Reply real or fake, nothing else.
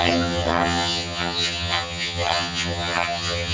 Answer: fake